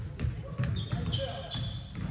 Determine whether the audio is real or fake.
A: real